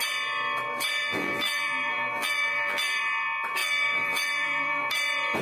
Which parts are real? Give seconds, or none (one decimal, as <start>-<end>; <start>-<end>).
0.0-1.0; 3.0-3.6; 4.9-5.4